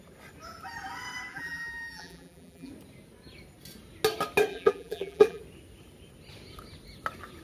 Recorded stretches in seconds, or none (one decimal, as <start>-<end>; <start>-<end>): 0.0-1.3; 2.7-4.5; 5.4-7.4